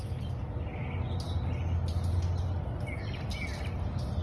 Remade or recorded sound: recorded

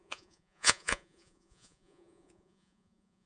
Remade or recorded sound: remade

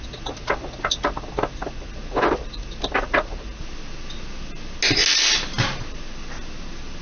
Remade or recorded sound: recorded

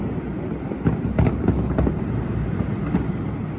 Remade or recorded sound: recorded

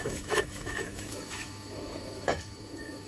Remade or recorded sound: remade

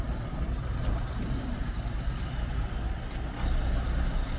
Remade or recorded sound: recorded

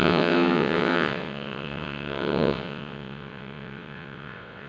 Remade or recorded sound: remade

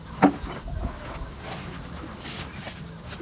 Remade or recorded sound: recorded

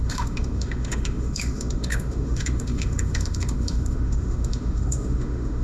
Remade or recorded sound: remade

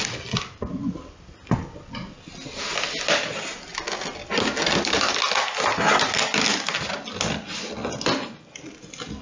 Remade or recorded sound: recorded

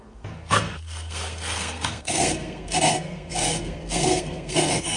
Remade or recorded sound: remade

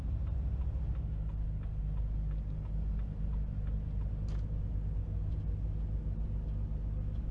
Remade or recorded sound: recorded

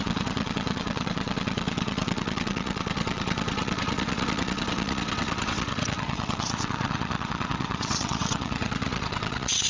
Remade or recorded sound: remade